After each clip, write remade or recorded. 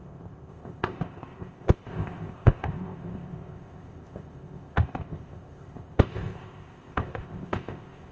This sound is remade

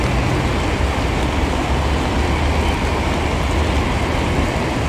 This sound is recorded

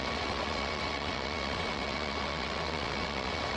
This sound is remade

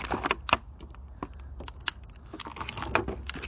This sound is recorded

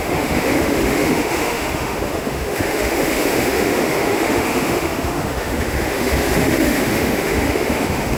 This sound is remade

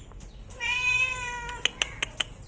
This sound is recorded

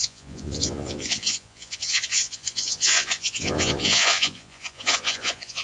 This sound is remade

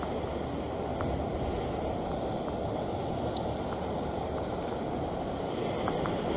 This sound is recorded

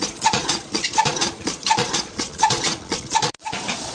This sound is remade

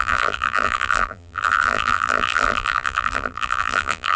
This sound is remade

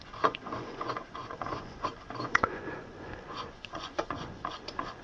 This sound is remade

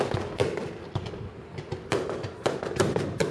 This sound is recorded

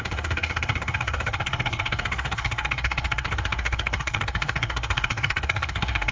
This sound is remade